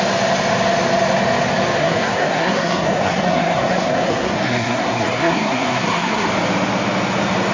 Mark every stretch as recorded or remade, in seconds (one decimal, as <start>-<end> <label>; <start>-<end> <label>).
0.0-1.8 recorded; 1.8-6.3 remade; 6.3-7.5 recorded